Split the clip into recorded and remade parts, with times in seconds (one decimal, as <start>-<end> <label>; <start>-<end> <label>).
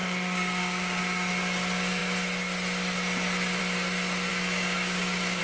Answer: 0.0-1.0 remade; 1.0-4.3 recorded; 4.3-5.4 remade